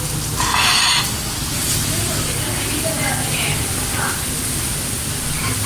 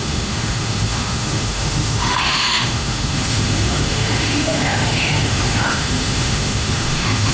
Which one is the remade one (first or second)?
second